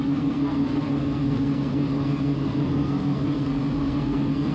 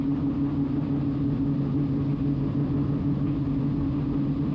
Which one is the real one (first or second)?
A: second